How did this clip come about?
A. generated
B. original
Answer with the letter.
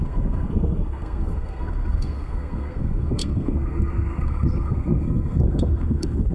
A